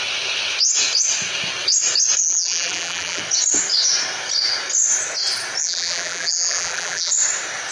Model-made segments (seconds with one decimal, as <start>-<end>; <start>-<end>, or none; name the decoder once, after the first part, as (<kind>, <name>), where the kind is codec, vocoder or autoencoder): 2.2-3.2 (vocoder, BigVGAN v2); 5.6-7.1